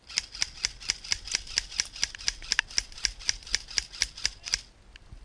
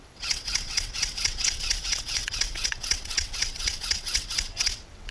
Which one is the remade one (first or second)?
second